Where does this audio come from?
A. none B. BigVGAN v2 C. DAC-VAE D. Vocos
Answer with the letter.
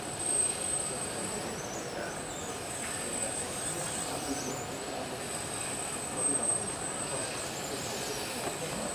B